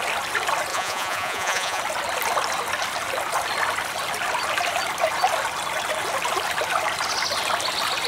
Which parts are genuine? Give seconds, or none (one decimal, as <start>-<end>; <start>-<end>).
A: 0.0-0.7; 1.8-8.1